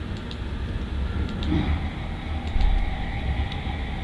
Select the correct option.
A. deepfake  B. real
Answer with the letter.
B